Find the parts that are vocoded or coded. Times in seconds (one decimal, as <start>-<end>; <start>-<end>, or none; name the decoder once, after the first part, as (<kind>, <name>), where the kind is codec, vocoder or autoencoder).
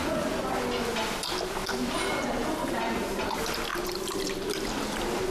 none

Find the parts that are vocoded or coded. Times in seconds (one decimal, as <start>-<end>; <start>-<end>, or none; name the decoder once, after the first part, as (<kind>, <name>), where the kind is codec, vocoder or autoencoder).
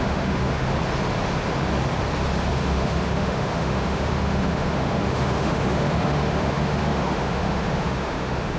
0.0-0.7 (autoencoder, DAC-VAE); 2.5-8.6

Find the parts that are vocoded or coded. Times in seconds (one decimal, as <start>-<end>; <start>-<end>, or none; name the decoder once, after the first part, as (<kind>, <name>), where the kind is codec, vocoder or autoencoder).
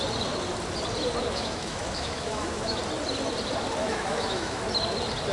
1.2-2.8 (autoencoder, DAC-VAE); 3.8-4.6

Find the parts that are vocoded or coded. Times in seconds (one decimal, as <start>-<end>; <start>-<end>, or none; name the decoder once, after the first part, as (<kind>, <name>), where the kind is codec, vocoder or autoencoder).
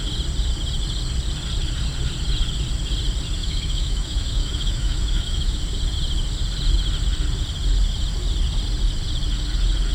3.4-5.6 (autoencoder, DAC-VAE)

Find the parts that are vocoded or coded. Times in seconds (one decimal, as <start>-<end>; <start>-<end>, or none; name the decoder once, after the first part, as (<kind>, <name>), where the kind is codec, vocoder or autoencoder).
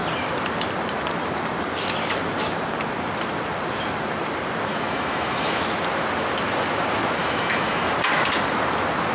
4.7-5.6 (autoencoder, DAC-VAE); 7.2-7.9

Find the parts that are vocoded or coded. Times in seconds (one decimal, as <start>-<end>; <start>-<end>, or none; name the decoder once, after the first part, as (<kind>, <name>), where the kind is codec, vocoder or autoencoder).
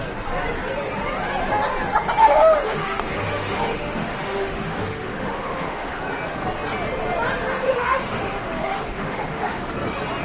2.2-6.0 (autoencoder, DAC-VAE); 7.4-9.7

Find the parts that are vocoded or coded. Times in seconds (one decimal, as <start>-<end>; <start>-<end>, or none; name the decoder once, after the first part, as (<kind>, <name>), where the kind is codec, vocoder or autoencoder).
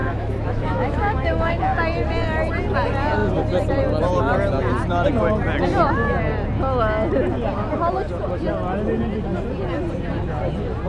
0.0-1.6 (autoencoder, DAC-VAE)